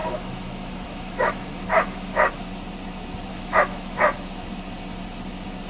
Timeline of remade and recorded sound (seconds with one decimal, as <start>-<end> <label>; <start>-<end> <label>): 0.0-2.3 remade; 2.3-3.3 recorded; 3.3-4.0 remade; 4.0-5.7 recorded